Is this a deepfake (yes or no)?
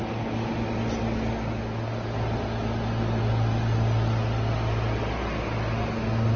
no